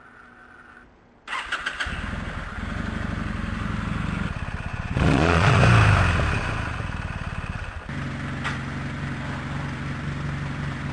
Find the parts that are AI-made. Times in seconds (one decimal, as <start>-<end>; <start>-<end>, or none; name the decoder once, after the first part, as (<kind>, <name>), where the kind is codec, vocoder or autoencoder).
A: 4.7-5.6 (vocoder, Vocos)